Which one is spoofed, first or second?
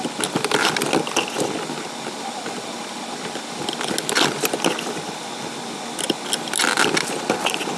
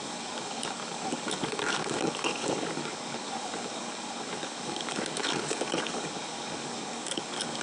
second